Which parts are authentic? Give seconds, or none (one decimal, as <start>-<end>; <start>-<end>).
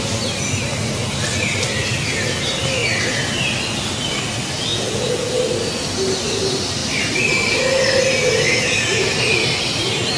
0.0-4.7; 5.3-10.2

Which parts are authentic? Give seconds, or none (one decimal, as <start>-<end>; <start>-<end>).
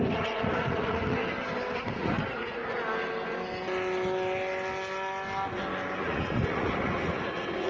1.2-1.8; 2.6-6.0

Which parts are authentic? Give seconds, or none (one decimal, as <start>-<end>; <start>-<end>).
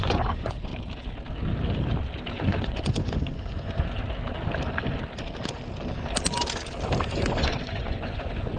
0.7-2.3; 4.0-7.1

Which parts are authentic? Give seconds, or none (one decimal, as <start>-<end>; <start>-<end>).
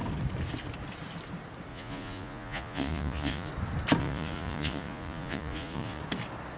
0.0-1.7; 3.5-4.0; 6.0-6.6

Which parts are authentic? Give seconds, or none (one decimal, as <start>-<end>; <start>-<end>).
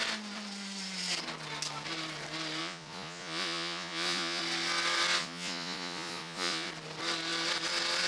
0.0-2.6; 4.4-5.2; 6.7-8.1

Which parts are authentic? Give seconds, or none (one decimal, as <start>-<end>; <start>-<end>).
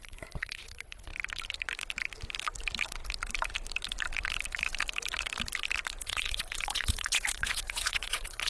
1.1-6.0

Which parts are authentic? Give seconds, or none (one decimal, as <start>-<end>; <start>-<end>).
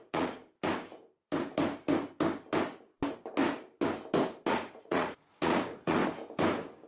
0.4-4.5; 6.0-6.9